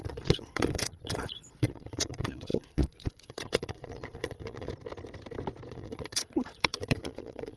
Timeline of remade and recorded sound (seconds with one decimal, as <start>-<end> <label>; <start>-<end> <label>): 0.0-4.7 remade; 4.7-5.7 recorded; 5.7-7.6 remade